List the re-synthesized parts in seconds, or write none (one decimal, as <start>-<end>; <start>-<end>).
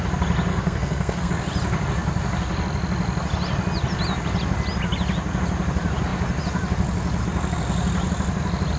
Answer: 0.5-1.3